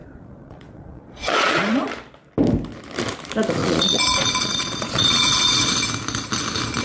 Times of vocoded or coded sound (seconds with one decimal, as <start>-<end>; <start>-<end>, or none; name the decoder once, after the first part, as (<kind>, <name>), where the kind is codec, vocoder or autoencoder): 0.0-1.9 (vocoder, Vocos); 3.6-5.7